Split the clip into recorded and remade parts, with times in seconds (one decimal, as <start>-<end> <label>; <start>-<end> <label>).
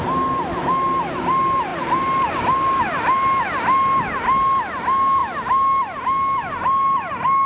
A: 0.0-7.5 recorded